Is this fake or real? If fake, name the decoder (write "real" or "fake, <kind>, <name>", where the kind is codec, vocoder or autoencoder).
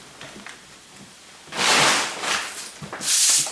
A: real